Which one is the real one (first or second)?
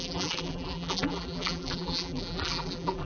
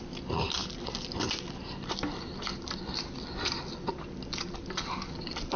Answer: second